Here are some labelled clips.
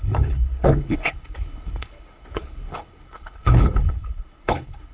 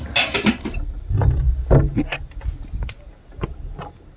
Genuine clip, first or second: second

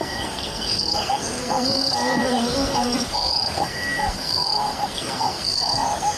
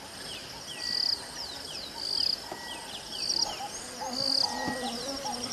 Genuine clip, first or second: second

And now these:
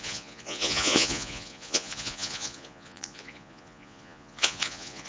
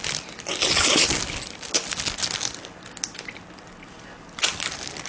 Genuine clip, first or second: second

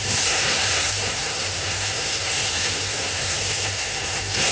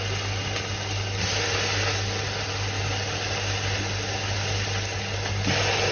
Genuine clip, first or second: second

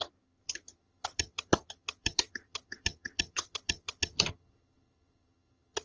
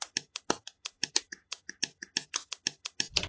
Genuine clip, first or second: second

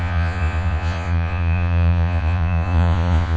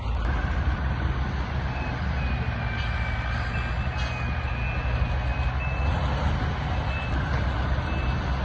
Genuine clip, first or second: second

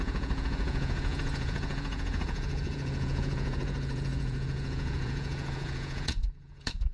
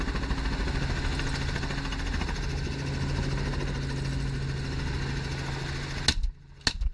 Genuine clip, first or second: second